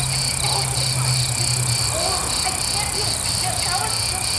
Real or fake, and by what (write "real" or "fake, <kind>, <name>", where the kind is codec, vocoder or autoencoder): real